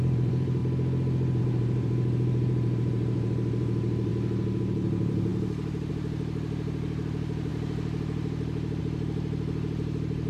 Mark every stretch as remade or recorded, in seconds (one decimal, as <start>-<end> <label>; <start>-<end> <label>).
0.0-0.6 remade; 0.6-1.4 recorded; 1.4-4.1 remade; 4.1-4.6 recorded; 4.6-10.3 remade